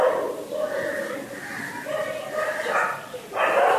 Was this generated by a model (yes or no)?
no